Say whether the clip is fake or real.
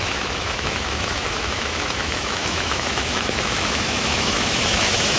fake